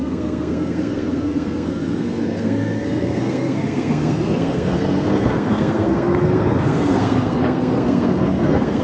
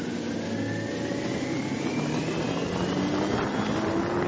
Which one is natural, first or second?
second